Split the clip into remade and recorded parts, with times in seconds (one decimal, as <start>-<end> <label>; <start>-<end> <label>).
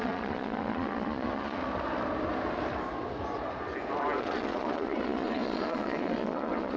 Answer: 0.0-1.6 remade; 1.6-4.2 recorded; 4.2-6.8 remade